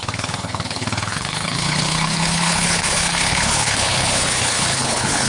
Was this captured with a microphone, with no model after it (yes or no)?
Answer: no